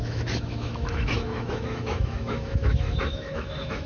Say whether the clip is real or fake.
fake